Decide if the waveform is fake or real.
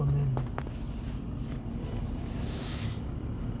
real